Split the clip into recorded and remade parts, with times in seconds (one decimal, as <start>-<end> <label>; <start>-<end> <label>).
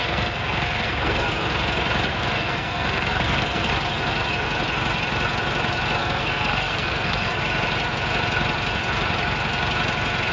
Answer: 0.0-1.3 remade; 1.3-2.1 recorded; 2.1-3.7 remade; 3.7-6.0 recorded; 6.0-7.4 remade; 7.4-10.3 recorded